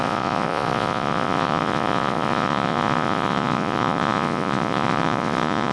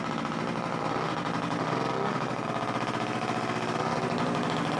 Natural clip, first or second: second